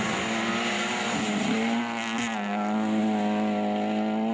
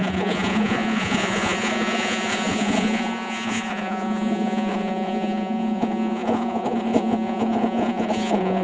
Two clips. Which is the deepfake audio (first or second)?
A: second